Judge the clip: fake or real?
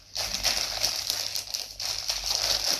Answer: real